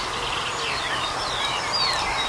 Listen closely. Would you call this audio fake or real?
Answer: real